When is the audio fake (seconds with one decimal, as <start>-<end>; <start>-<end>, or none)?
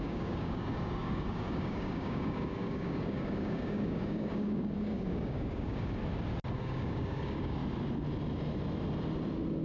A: 0.0-6.0; 6.6-7.6